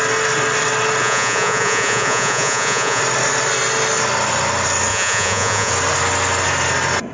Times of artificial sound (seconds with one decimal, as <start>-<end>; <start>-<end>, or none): 1.0-3.0; 4.9-5.7